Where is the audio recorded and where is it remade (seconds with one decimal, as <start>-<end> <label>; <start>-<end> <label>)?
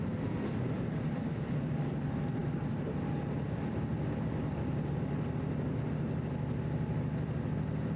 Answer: 0.0-8.0 recorded